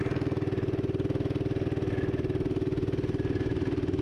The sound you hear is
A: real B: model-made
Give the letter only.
A